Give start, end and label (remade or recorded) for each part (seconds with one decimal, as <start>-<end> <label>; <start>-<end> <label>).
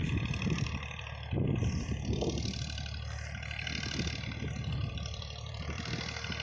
0.0-1.0 remade; 1.0-1.6 recorded; 1.6-2.4 remade; 2.4-4.8 recorded; 4.8-5.8 remade; 5.8-6.4 recorded